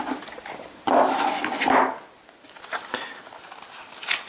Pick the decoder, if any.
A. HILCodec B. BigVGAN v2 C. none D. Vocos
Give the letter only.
C